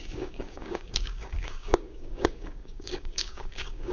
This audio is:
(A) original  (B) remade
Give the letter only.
B